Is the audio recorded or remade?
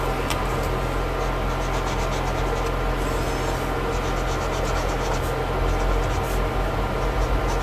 recorded